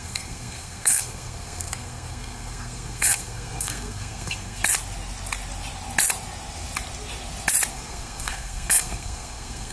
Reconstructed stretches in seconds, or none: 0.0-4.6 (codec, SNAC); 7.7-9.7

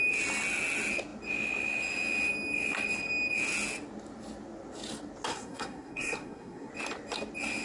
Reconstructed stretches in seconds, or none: 5.3-6.7 (codec, SNAC)

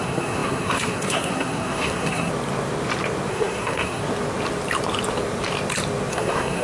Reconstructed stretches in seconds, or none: 0.0-2.3 (codec, SNAC); 3.3-4.0; 6.1-6.6

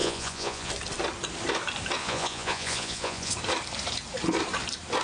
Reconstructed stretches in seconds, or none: 0.0-0.7 (vocoder, Vocos); 2.0-3.3

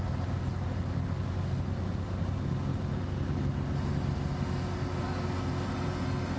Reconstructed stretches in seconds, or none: none

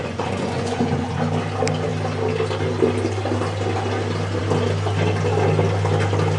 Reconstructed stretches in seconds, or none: 0.0-1.2 (vocoder, Vocos)

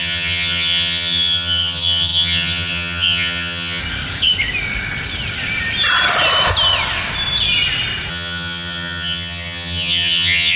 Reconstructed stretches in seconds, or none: 0.0-3.8 (vocoder, HiFi-GAN); 8.1-10.6

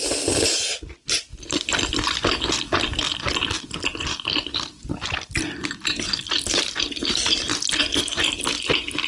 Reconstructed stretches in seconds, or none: none